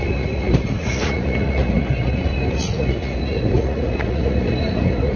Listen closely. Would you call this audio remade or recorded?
remade